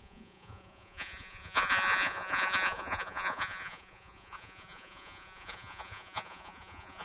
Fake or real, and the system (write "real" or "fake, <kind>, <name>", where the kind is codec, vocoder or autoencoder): fake, vocoder, Vocos